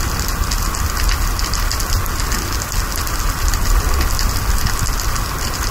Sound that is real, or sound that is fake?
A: real